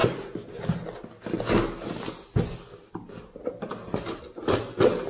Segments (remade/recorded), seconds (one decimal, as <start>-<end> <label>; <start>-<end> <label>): 0.0-5.1 recorded